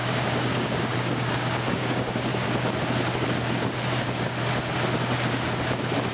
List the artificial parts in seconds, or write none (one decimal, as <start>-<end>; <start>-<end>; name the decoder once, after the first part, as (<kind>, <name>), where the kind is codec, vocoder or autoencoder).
0.0-2.3 (codec, DAC)